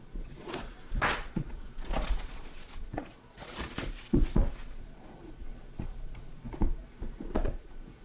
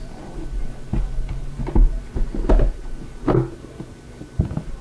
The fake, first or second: first